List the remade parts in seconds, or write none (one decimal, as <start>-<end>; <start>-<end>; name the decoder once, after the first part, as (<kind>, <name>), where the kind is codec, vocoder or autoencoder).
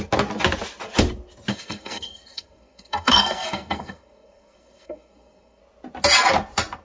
1.5-5.6 (codec, SNAC)